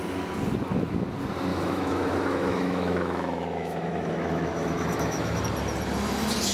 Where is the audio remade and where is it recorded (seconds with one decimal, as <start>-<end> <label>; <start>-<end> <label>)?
0.0-1.5 recorded; 1.5-5.4 remade; 5.4-6.5 recorded

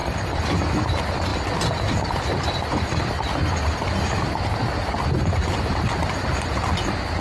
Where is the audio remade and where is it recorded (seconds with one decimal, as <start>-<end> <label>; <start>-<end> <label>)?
0.0-0.6 remade; 0.6-7.2 recorded